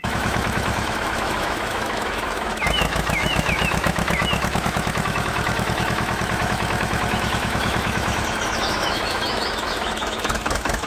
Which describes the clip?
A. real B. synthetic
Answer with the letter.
B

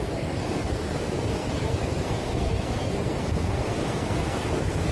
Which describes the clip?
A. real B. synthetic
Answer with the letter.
B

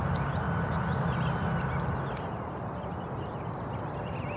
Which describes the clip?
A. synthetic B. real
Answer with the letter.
B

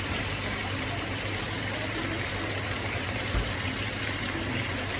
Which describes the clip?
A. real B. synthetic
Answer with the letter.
B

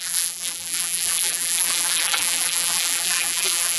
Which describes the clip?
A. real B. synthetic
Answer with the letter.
B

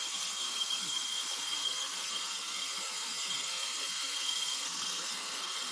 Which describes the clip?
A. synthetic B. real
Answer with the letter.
A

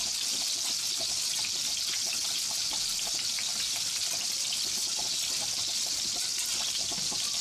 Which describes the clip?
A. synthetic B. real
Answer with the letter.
B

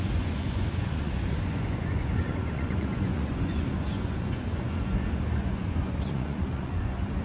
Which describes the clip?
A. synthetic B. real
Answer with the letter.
A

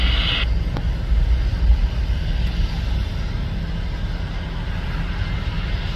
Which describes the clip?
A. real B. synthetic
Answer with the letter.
A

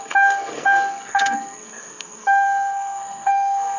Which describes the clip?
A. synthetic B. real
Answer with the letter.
A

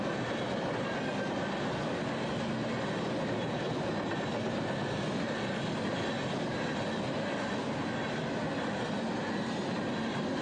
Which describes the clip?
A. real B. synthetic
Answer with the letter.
A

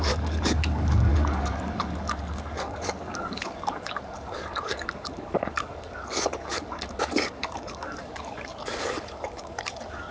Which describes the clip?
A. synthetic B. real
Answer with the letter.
A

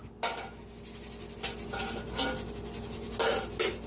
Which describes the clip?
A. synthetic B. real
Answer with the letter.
B